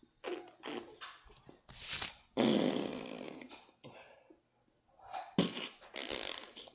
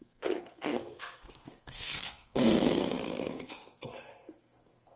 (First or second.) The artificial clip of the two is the second